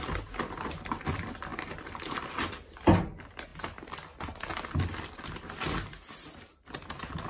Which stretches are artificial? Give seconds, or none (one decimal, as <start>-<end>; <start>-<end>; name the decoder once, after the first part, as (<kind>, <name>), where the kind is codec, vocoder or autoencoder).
none